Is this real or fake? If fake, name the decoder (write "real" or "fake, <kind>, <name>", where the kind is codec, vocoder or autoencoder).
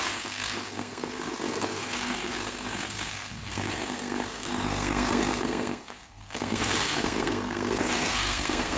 fake, codec, SNAC